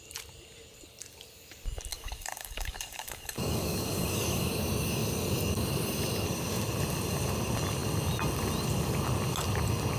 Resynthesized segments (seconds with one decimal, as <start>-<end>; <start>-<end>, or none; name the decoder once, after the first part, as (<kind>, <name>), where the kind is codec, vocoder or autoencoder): 1.9-4.5 (codec, DAC)